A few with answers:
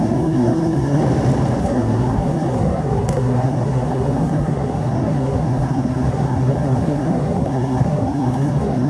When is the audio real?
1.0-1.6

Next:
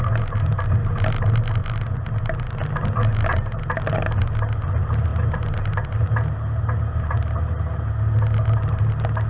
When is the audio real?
0.0-9.3